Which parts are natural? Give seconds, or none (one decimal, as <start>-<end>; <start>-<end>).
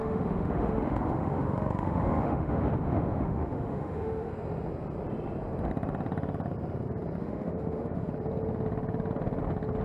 4.3-7.2; 8.1-9.8